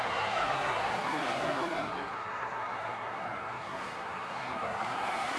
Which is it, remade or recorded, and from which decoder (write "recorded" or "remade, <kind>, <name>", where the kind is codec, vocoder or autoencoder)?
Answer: remade, codec, SNAC